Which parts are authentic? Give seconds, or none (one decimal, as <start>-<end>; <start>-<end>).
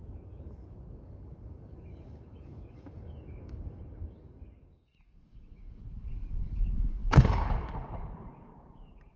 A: none